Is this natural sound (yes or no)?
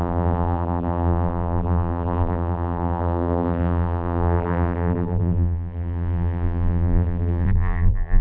no